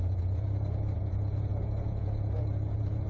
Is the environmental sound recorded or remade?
remade